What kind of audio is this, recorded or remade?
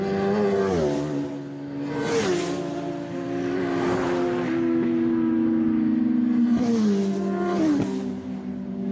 recorded